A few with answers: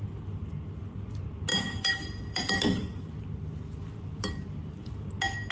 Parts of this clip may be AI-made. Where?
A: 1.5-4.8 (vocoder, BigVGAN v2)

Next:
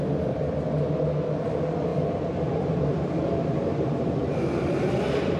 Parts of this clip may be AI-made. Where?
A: 1.9-5.4 (vocoder, BigVGAN v2)